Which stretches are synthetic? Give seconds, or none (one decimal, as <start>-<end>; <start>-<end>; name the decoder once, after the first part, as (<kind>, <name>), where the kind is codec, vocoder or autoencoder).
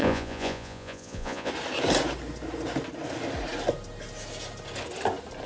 0.0-1.5 (vocoder, Vocos)